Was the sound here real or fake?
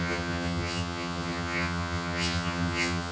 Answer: fake